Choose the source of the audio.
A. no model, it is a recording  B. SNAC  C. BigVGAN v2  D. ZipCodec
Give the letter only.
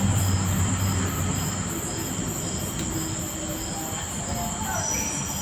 A